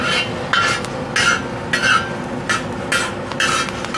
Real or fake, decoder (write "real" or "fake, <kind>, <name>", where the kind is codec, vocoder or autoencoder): real